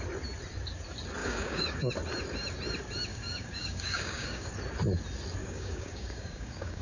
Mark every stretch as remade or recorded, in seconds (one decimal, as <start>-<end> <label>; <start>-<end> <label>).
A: 0.0-1.2 recorded; 1.2-1.9 remade; 1.9-3.1 recorded; 3.1-4.5 remade; 4.5-5.4 recorded; 5.4-6.8 remade